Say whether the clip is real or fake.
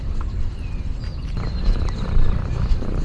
real